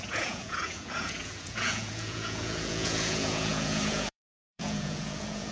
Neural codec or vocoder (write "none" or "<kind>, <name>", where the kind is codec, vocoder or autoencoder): vocoder, Vocos